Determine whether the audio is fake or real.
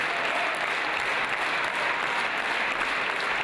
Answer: real